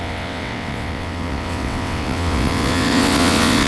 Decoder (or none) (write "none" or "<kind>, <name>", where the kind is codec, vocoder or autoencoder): vocoder, WaveNeXt